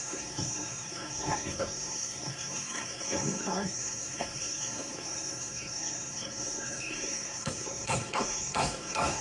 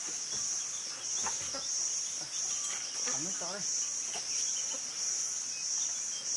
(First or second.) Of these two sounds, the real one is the second